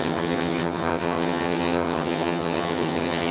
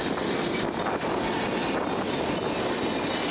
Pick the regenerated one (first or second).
first